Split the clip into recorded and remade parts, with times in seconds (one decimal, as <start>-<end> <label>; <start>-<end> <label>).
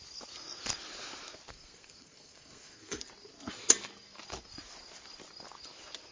0.0-1.5 recorded; 1.5-3.0 remade; 3.0-6.1 recorded